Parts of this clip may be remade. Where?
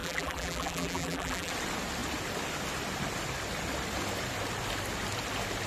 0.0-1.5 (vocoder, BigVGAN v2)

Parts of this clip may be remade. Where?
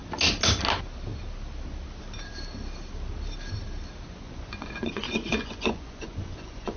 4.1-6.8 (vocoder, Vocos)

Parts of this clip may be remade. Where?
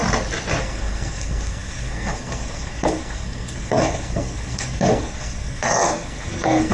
0.6-6.7 (codec, SNAC)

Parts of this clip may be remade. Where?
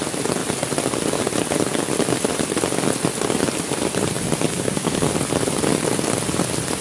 4.5-5.1 (codec, DAC)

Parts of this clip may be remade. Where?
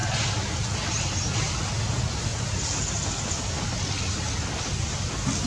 none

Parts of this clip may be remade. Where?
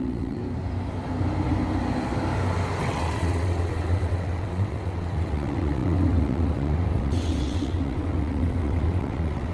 0.0-0.4 (vocoder, WaveNeXt); 2.8-9.5